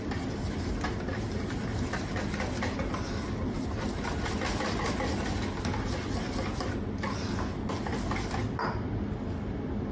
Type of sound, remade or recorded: recorded